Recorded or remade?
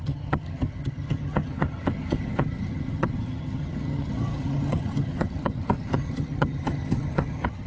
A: remade